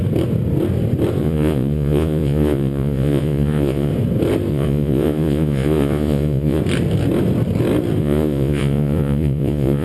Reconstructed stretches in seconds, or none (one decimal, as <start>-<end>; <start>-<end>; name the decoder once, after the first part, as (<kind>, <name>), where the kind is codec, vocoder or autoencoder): 1.2-3.9 (vocoder, Vocos); 4.5-6.6; 8.0-9.8